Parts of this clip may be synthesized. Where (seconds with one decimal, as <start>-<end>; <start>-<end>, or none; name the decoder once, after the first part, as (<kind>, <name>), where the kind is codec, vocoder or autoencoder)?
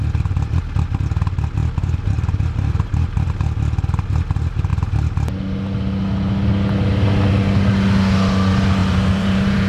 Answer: 1.6-3.3 (vocoder, BigVGAN v2); 8.8-9.7